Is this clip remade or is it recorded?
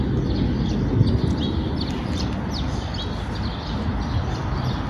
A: recorded